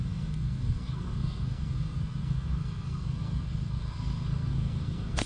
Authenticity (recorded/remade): remade